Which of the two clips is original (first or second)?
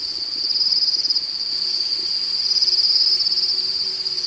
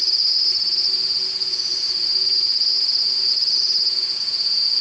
first